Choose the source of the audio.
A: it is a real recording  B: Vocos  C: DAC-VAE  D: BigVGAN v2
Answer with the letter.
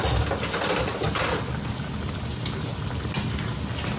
A